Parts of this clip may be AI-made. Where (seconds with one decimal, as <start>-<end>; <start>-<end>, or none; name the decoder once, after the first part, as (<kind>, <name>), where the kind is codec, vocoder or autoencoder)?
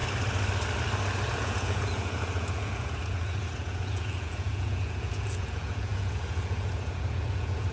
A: 1.3-7.7 (vocoder, Vocos)